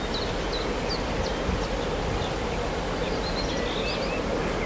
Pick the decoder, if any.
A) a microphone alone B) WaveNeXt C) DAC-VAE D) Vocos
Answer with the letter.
A